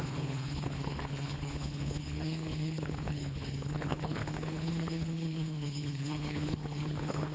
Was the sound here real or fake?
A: fake